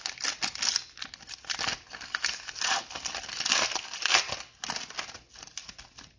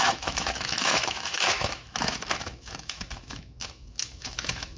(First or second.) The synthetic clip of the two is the second